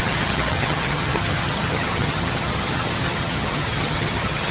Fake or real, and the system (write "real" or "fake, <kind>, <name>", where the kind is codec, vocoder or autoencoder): fake, vocoder, HiFi-GAN